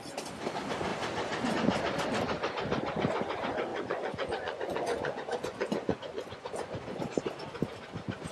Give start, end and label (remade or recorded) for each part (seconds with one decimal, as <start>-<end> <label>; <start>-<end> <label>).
0.0-3.7 recorded; 3.7-7.0 remade; 7.0-8.3 recorded